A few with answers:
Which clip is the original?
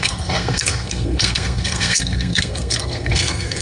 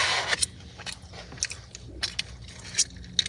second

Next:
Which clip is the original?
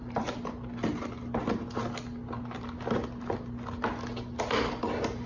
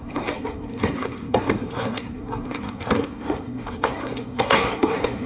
first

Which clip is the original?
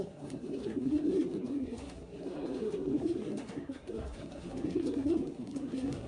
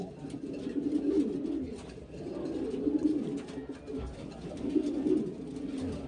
second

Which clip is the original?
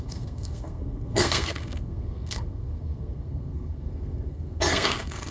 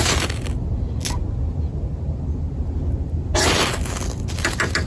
second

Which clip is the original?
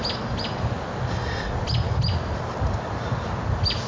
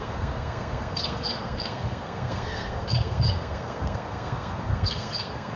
first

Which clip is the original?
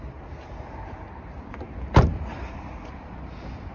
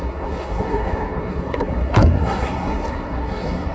first